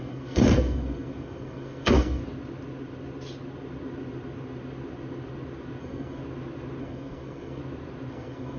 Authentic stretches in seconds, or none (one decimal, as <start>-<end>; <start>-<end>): 2.2-5.8; 6.2-6.8; 7.6-8.1